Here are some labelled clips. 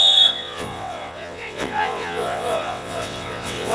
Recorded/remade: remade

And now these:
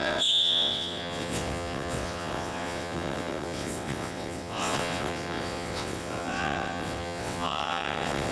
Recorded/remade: remade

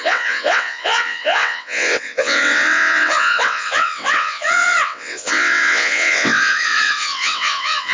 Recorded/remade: remade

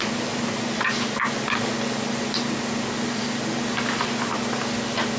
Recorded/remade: recorded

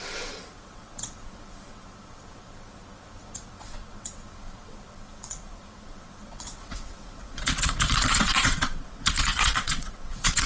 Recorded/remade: remade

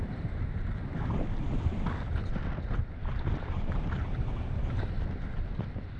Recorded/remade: recorded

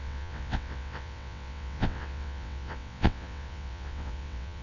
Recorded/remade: remade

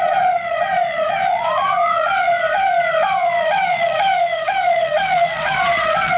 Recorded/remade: remade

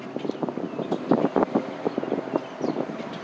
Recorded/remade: recorded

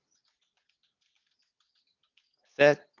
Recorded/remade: recorded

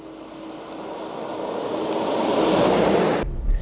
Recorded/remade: recorded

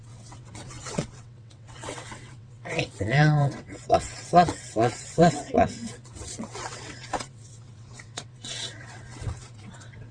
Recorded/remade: remade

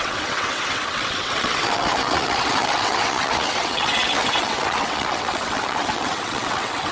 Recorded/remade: remade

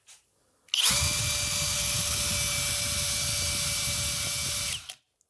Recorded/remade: recorded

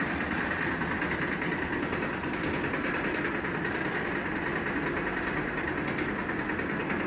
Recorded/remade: recorded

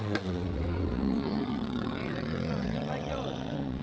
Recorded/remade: remade